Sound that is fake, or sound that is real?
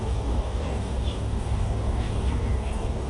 fake